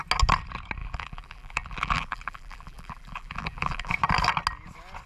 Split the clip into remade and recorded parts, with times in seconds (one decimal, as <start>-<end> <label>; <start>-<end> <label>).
0.0-0.8 recorded; 0.8-3.9 remade; 3.9-5.1 recorded